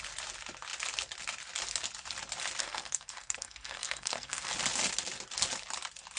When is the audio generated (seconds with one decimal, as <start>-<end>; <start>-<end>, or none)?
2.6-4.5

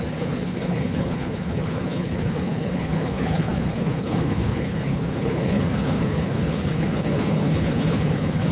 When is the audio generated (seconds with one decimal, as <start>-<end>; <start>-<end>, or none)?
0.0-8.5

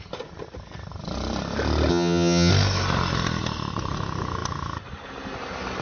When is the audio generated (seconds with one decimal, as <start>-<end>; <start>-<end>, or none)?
1.9-2.5

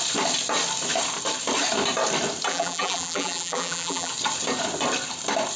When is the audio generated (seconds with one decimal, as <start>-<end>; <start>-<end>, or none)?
2.5-4.1

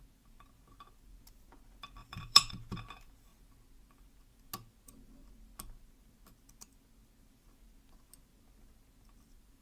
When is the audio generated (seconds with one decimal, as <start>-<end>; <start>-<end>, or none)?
2.0-2.5

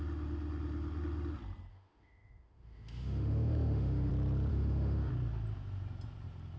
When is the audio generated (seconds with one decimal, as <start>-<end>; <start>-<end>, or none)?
1.7-4.1; 4.5-5.1

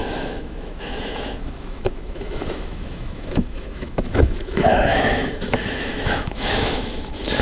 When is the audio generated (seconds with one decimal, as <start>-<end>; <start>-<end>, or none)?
0.0-7.4